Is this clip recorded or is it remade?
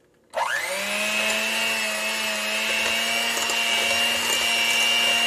recorded